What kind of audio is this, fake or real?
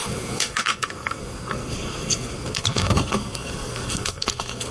fake